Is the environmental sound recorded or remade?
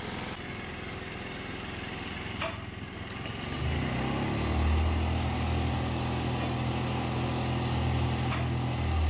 recorded